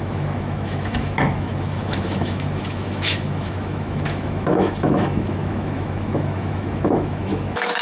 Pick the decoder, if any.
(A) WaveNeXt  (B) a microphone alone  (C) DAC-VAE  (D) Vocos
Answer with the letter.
C